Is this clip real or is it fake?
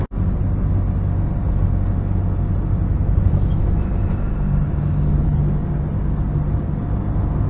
real